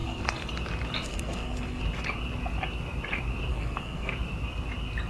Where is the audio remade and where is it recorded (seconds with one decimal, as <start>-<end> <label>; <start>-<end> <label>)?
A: 0.0-0.5 remade; 0.5-1.1 recorded; 1.1-1.8 remade; 1.8-3.5 recorded; 3.5-4.1 remade; 4.1-5.1 recorded